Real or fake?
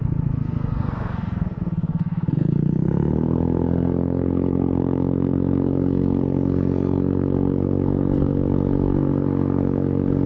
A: fake